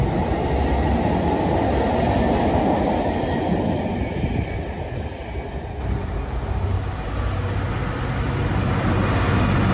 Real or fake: real